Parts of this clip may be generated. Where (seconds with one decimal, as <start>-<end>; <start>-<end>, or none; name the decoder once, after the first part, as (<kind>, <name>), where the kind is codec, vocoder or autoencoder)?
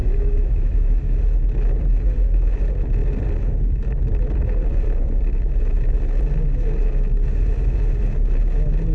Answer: 0.0-1.2 (autoencoder, DAC-VAE)